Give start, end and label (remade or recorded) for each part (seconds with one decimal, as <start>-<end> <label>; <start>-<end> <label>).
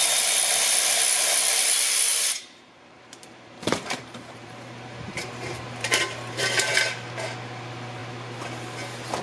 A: 0.0-2.1 recorded; 2.1-6.7 remade; 6.7-9.2 recorded